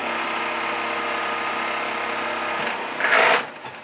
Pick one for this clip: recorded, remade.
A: recorded